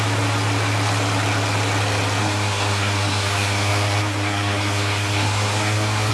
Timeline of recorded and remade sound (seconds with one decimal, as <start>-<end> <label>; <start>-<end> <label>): 0.0-2.2 recorded; 2.2-6.1 remade